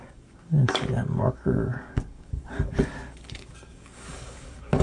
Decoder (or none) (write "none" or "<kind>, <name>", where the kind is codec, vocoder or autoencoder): codec, DAC